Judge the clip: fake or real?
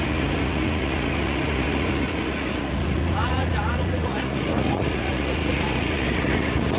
fake